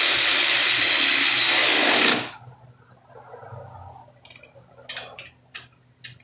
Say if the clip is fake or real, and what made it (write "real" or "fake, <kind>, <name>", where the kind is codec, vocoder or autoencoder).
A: real